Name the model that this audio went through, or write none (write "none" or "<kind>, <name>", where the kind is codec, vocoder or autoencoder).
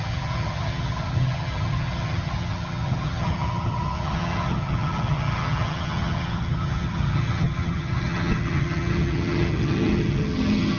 vocoder, HiFi-GAN